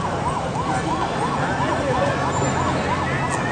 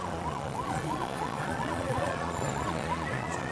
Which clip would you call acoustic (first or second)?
first